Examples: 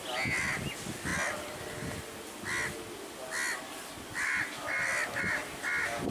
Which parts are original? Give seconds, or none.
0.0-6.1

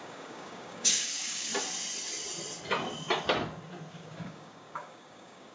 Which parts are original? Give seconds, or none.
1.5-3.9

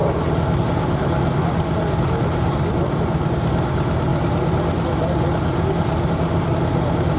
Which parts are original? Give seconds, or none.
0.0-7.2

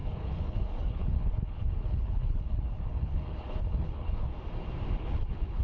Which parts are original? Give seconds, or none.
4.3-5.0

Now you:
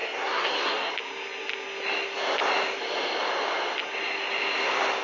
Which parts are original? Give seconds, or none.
0.9-5.0

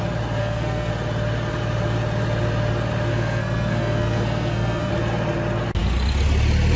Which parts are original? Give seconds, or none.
0.0-0.4; 0.9-3.1; 4.9-6.8

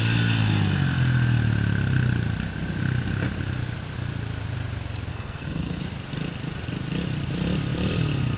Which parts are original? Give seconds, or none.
0.0-5.1; 5.8-8.4

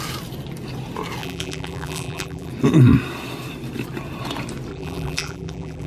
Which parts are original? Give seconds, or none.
0.0-1.2; 2.5-4.7